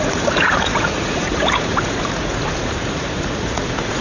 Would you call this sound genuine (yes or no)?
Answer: no